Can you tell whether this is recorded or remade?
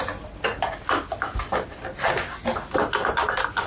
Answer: recorded